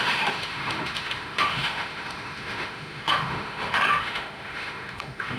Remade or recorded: remade